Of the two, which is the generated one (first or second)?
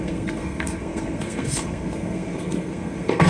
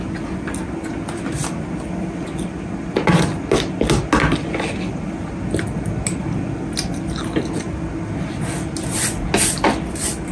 first